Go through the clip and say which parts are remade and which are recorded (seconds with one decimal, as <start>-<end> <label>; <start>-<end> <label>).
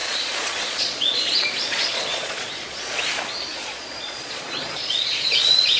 0.0-3.0 remade; 3.0-3.5 recorded; 3.5-5.8 remade